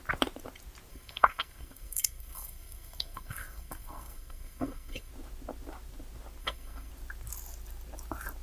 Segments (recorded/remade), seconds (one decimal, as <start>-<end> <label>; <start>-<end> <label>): 0.0-0.9 recorded; 0.9-5.1 remade; 5.1-6.4 recorded; 6.4-6.9 remade; 6.9-8.4 recorded